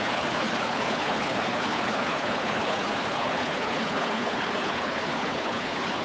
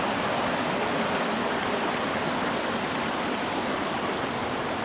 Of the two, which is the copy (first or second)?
first